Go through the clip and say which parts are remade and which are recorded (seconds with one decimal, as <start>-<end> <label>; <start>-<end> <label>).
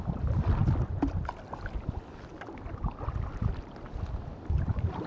0.0-5.1 recorded